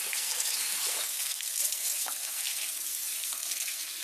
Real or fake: fake